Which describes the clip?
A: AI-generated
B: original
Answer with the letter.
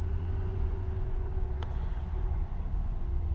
A